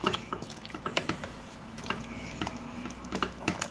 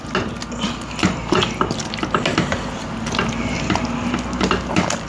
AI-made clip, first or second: first